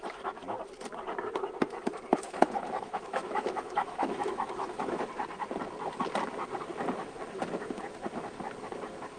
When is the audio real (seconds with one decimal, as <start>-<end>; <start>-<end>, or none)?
0.0-2.1; 5.0-9.2